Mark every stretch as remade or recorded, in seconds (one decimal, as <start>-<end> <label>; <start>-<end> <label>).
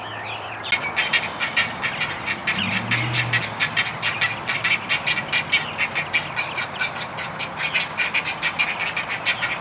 0.0-9.6 recorded